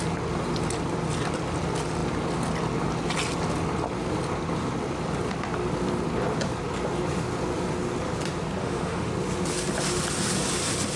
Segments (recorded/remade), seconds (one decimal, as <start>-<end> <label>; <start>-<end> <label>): 0.0-8.6 recorded; 8.6-9.1 remade; 9.1-11.0 recorded